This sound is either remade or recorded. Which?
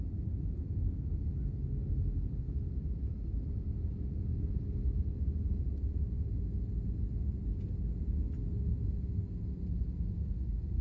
recorded